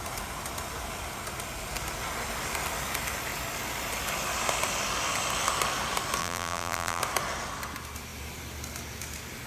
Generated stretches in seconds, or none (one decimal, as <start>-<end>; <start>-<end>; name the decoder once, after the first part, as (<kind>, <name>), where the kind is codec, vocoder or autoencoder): 6.2-7.0 (vocoder, BigVGAN v2)